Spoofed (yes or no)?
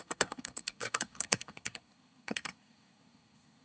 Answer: yes